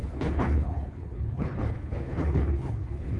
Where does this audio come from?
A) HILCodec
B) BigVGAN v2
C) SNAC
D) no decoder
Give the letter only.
A